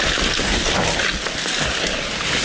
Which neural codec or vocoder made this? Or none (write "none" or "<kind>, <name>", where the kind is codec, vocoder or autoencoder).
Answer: none